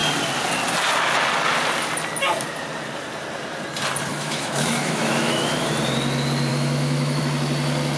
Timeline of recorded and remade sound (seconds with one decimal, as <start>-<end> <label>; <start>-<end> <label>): 0.0-4.1 recorded; 4.1-5.7 remade; 5.7-6.5 recorded; 6.5-7.2 remade; 7.2-8.0 recorded